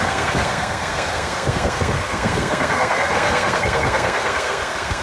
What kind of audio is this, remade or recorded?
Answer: remade